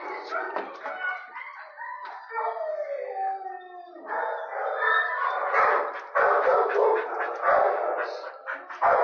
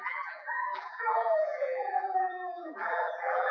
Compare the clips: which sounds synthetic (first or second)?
second